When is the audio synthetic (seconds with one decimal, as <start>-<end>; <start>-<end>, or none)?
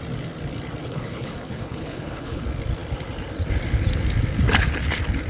0.8-2.4